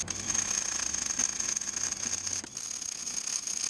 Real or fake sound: real